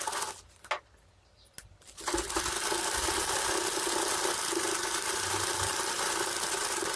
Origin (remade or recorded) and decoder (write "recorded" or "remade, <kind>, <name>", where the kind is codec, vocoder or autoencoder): recorded